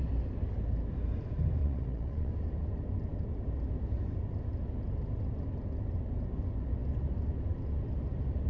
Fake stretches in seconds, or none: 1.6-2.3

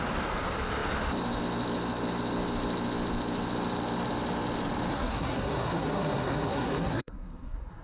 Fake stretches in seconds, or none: 4.9-7.8

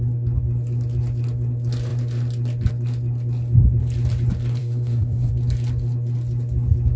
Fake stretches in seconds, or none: 4.6-5.3

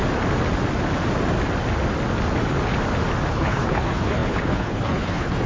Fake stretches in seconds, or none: 3.3-5.5

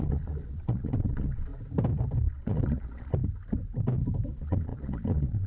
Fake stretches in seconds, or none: 0.0-1.5; 2.3-3.2; 4.3-5.5